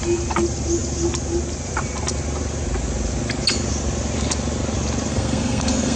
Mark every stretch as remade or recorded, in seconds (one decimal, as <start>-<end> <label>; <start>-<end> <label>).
0.0-5.1 recorded; 5.1-6.0 remade